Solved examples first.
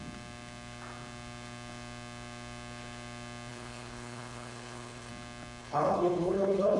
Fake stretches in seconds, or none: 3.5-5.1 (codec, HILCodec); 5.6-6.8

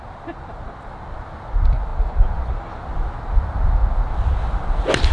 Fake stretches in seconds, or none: none

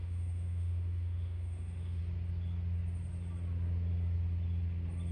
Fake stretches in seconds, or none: 0.0-2.0 (autoencoder, DAC-VAE)

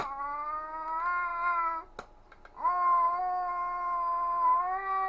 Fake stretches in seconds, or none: none

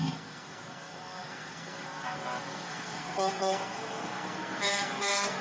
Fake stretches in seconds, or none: 0.0-5.4 (codec, SNAC)